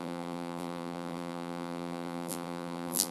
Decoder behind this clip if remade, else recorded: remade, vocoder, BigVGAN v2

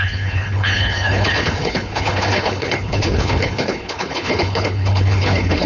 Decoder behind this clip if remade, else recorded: remade, codec, HILCodec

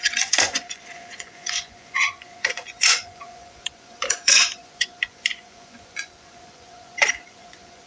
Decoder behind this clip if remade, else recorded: remade, vocoder, Vocos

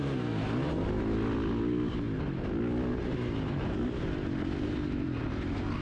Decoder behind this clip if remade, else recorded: recorded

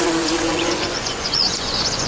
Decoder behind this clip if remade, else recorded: remade, vocoder, Vocos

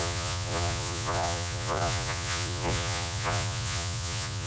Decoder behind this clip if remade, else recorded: remade, vocoder, Vocos